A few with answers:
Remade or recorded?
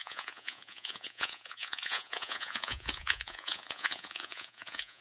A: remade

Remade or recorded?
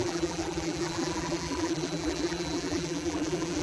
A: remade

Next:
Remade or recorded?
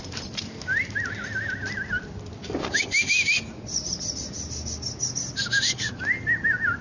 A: recorded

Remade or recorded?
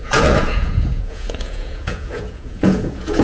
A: remade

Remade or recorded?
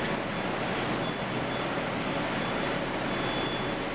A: recorded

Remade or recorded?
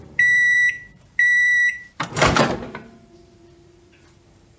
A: remade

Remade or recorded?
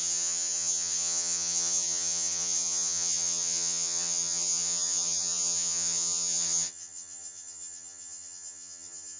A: remade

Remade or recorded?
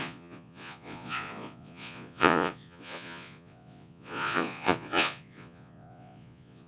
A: remade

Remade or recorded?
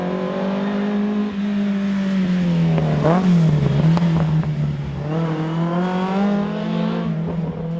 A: recorded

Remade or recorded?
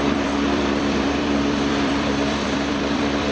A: remade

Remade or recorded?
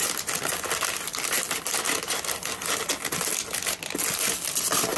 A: recorded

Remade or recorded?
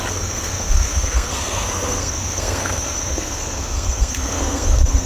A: remade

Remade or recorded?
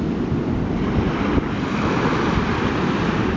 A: recorded